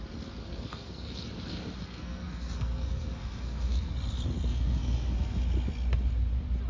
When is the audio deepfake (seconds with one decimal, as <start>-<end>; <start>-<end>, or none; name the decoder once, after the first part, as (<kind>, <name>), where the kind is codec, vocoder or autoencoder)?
0.4-3.9 (codec, SNAC); 4.5-5.4